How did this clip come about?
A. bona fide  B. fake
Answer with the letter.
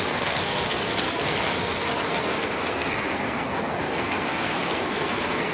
B